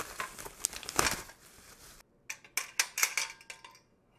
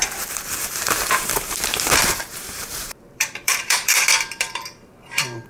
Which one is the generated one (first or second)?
second